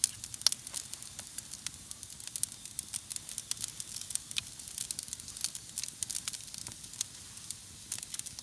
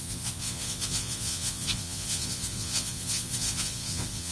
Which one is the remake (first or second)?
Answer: second